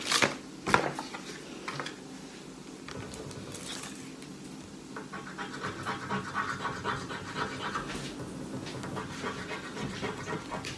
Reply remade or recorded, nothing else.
recorded